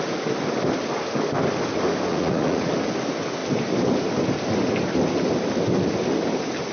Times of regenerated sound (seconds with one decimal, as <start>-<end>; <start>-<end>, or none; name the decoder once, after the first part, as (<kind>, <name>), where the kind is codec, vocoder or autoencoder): 2.1-2.7 (vocoder, Vocos)